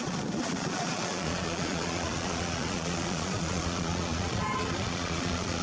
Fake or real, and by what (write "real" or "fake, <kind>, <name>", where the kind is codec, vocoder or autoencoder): fake, vocoder, Vocos